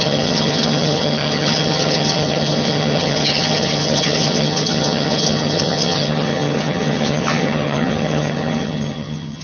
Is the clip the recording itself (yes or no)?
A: no